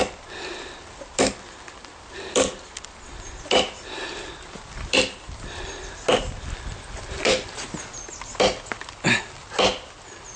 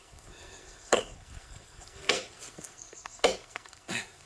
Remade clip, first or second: second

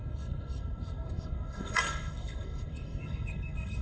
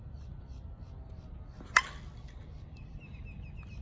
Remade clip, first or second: first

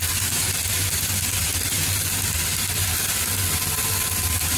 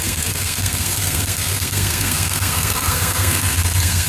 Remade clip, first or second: second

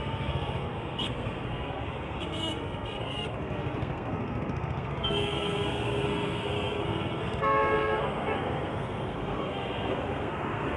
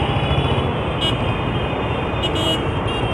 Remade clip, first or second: first